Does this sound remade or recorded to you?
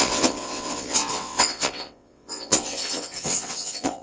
remade